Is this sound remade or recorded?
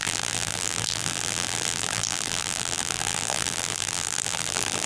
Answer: remade